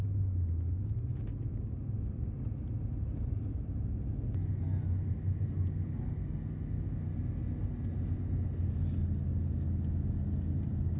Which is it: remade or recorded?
recorded